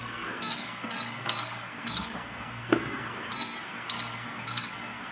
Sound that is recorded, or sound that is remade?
remade